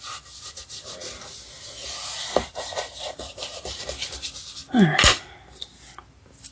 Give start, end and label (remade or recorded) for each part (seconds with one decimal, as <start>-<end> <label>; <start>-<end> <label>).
0.0-6.5 recorded